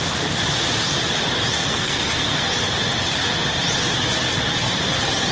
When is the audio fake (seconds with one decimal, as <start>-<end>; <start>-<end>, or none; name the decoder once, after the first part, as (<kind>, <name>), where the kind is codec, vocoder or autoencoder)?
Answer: 1.6-2.5 (codec, SNAC)